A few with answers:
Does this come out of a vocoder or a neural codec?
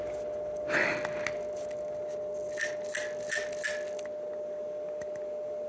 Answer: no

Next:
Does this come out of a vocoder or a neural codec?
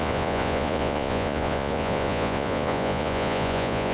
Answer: yes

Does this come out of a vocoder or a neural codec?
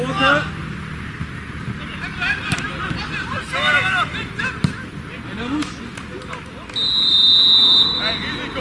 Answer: no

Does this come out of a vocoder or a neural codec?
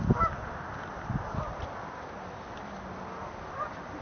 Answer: no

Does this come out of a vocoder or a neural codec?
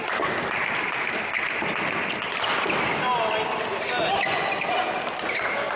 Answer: no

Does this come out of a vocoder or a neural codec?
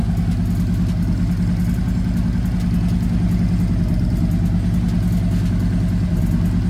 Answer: no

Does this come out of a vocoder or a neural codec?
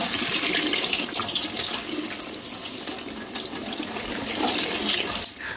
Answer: no